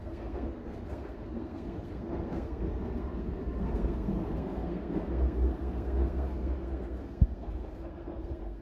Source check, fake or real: fake